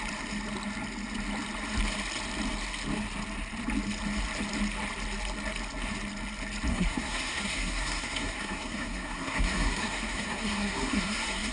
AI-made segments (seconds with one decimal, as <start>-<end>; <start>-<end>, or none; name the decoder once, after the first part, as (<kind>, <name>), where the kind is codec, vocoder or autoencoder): 6.7-11.5 (codec, SNAC)